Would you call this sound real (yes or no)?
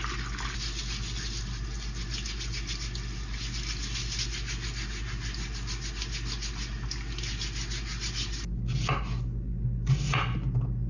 yes